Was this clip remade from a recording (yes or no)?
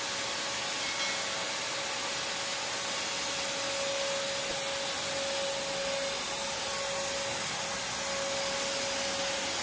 no